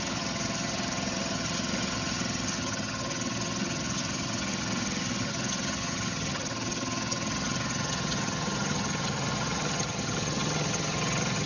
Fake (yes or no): yes